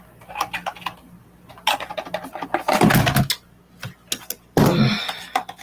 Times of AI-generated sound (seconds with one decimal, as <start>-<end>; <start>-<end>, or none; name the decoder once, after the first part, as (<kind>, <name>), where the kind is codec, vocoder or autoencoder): none